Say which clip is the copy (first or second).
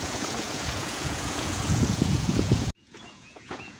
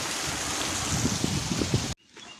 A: first